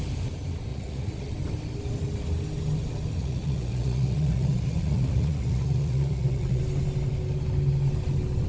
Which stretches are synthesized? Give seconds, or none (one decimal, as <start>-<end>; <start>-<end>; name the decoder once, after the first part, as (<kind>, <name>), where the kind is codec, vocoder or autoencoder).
0.7-1.3 (vocoder, Vocos); 3.2-6.6